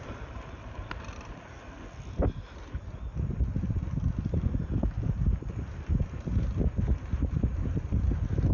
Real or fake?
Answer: real